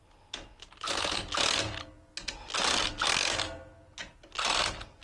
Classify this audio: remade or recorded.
recorded